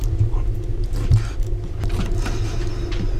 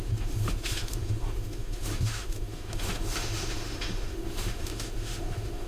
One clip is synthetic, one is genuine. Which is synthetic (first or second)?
second